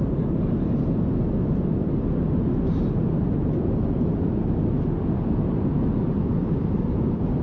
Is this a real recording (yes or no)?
yes